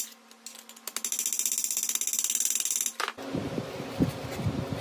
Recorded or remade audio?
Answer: recorded